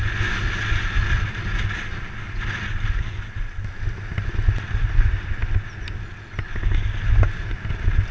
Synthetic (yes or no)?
no